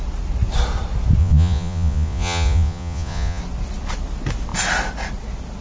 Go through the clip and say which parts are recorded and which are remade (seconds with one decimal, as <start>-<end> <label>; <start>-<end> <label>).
0.0-1.2 recorded; 1.2-3.4 remade; 3.4-5.6 recorded